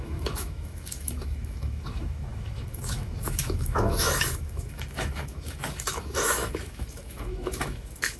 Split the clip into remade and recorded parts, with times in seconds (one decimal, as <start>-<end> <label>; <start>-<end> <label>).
0.0-8.2 remade